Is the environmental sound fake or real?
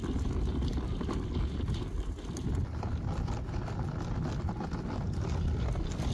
real